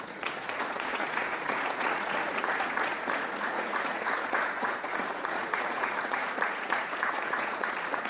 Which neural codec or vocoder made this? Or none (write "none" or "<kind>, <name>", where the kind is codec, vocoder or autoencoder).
vocoder, Vocos